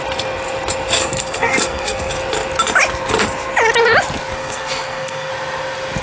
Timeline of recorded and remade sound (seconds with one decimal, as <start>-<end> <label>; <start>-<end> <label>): 0.0-1.0 recorded; 1.0-2.1 remade; 2.1-4.4 recorded; 4.4-5.3 remade; 5.3-6.0 recorded